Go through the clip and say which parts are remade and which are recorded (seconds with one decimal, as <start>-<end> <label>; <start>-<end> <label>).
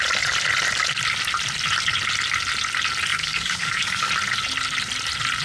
0.0-3.1 recorded; 3.1-4.1 remade; 4.1-5.4 recorded